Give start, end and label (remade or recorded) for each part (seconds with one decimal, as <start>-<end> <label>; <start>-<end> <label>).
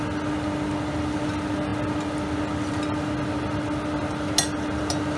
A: 0.0-5.2 recorded